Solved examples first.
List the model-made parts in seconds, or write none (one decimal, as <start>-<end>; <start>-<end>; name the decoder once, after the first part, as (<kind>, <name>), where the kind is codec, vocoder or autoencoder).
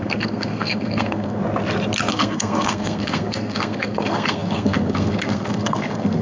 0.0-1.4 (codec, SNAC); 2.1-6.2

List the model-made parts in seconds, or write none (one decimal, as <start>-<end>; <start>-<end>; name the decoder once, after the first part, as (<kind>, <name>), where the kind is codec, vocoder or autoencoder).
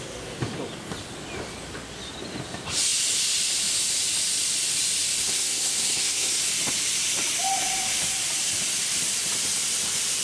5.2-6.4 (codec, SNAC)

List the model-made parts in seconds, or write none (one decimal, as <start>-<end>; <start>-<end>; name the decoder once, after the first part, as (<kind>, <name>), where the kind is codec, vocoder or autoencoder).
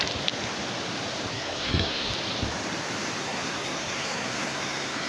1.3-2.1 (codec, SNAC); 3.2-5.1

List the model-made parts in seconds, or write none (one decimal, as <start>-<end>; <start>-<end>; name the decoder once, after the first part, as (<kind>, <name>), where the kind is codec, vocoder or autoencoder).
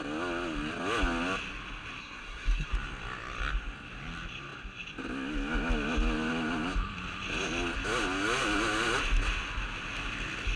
2.0-2.7 (codec, SNAC)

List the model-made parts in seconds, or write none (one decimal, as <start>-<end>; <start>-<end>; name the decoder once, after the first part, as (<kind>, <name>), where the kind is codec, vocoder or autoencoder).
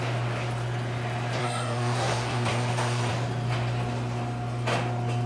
1.4-3.1 (codec, SNAC)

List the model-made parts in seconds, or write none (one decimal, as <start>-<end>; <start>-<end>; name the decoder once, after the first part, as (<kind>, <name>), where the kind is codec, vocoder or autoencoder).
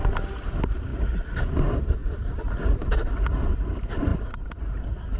none